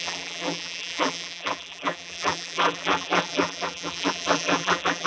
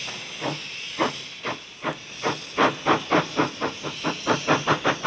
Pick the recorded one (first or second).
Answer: second